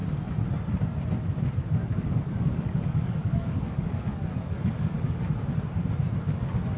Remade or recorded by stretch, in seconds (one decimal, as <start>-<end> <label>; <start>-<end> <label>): 0.0-1.8 recorded; 1.8-5.2 remade; 5.2-6.8 recorded